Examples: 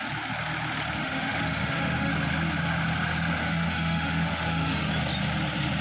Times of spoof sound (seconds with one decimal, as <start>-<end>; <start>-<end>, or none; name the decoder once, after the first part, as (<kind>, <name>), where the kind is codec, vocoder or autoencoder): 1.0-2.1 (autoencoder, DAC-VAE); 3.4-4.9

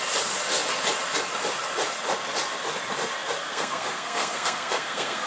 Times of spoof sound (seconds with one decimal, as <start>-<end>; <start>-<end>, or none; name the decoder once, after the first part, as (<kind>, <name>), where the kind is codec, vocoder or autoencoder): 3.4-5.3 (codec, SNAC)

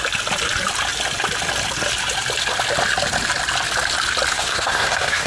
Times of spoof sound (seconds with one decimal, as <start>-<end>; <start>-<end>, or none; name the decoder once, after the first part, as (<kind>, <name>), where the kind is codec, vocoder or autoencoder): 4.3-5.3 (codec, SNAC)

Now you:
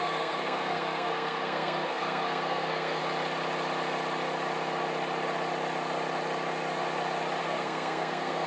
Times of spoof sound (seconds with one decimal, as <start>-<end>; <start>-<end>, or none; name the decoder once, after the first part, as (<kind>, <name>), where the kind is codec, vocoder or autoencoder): 0.0-3.0 (codec, SNAC); 7.4-8.5

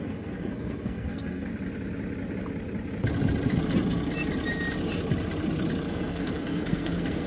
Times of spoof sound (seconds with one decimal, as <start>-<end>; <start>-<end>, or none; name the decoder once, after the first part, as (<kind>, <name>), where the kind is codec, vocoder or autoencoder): 0.0-1.5 (codec, SNAC); 5.9-7.3